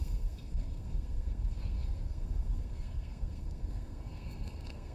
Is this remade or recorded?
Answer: remade